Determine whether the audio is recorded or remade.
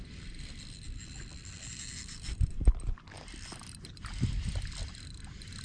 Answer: remade